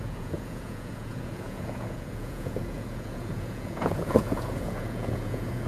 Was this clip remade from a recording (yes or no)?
yes